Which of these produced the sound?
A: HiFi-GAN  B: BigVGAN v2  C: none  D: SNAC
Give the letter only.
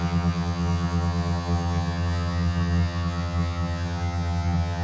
A